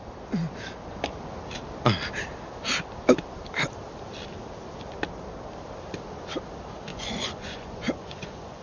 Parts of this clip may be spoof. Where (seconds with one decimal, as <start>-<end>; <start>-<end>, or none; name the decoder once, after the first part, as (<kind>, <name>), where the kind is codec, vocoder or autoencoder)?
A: 6.9-8.6 (vocoder, Vocos)